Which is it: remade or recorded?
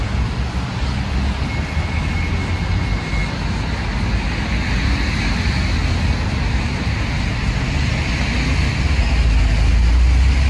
recorded